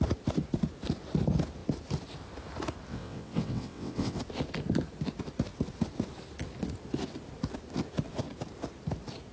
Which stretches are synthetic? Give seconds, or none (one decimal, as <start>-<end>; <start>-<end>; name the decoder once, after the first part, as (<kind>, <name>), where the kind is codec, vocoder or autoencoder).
2.9-4.2 (vocoder, WaveNeXt)